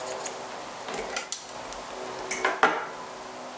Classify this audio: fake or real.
real